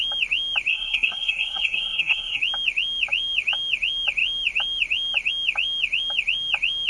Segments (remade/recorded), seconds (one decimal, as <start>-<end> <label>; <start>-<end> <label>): 0.0-0.7 recorded; 0.7-2.4 remade; 2.4-6.9 recorded